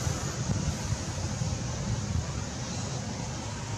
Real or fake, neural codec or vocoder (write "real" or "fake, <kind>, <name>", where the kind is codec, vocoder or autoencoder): real